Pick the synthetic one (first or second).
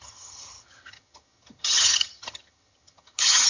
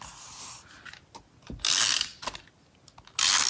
first